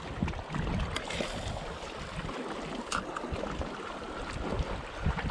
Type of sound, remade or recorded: recorded